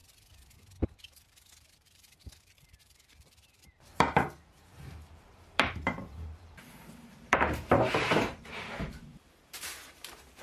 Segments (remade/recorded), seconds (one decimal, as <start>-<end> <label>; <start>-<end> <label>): 0.0-10.4 remade